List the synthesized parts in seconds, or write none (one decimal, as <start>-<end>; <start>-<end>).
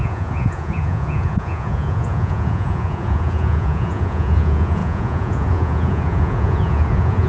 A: 0.0-7.3